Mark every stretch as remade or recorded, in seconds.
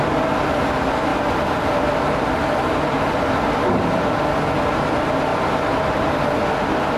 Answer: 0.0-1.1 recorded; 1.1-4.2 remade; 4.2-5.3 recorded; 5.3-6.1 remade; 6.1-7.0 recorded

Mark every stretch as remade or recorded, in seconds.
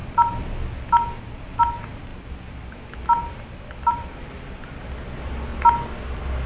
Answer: 0.0-1.6 recorded; 1.6-2.1 remade; 2.1-3.9 recorded; 3.9-5.5 remade; 5.5-6.0 recorded; 6.0-6.5 remade